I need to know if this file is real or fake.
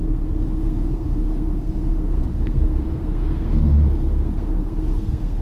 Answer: fake